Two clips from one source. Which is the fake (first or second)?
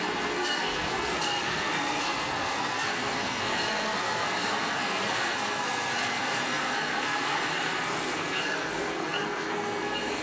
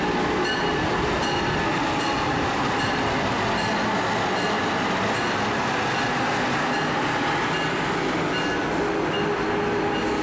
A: first